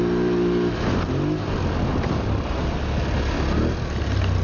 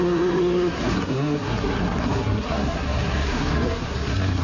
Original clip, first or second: first